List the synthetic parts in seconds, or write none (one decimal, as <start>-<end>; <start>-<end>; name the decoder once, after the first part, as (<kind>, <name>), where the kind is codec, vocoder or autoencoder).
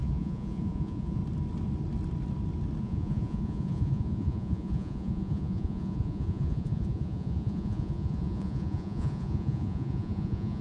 0.0-1.2 (vocoder, Vocos); 2.8-10.6